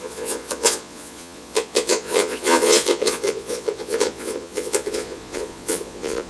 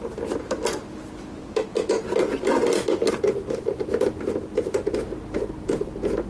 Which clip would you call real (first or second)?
second